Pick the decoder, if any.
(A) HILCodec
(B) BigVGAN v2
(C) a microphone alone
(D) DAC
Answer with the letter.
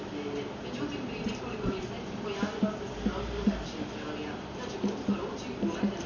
C